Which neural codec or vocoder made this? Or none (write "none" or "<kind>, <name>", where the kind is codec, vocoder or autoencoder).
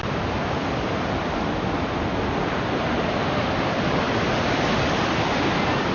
none